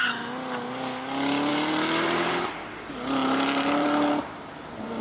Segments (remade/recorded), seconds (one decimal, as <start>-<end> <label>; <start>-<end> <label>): 0.0-1.5 recorded; 1.5-2.5 remade; 2.5-3.2 recorded; 3.2-4.4 remade; 4.4-5.0 recorded

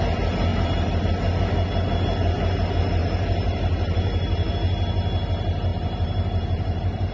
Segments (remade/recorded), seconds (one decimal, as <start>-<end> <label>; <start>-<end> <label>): 0.0-0.5 recorded; 0.5-1.1 remade; 1.1-3.0 recorded; 3.0-4.5 remade; 4.5-5.7 recorded; 5.7-7.1 remade